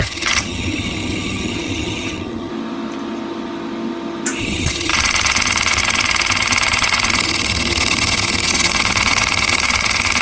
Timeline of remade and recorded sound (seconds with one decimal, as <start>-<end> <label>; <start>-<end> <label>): 0.0-2.5 remade; 2.5-4.4 recorded; 4.4-10.2 remade

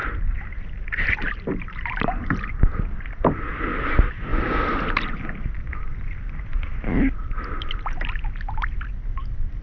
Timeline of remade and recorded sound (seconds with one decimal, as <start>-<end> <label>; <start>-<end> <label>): 0.0-3.0 remade; 3.0-4.3 recorded; 4.3-7.3 remade; 7.3-9.6 recorded

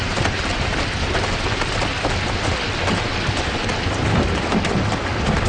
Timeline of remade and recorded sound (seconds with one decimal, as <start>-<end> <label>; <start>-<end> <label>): 0.0-5.5 recorded

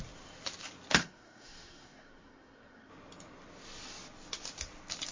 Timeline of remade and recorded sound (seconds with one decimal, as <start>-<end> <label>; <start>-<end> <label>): 0.0-1.0 recorded; 1.0-2.9 remade; 2.9-5.1 recorded

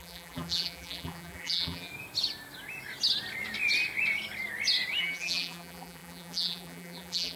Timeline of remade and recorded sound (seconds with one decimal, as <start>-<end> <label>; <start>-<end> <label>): 0.0-1.9 remade; 1.9-5.0 recorded; 5.0-7.4 remade

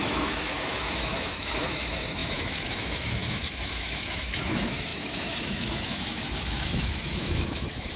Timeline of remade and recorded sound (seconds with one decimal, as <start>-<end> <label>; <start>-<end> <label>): 0.0-8.0 remade

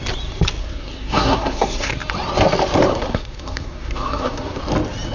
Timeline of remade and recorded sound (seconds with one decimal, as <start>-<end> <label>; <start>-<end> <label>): 0.0-0.6 recorded; 0.6-1.9 remade; 1.9-2.9 recorded; 2.9-4.6 remade; 4.6-5.1 recorded

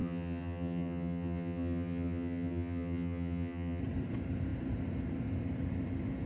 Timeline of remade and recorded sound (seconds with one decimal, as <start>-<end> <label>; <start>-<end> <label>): 0.0-3.8 remade; 3.8-6.3 recorded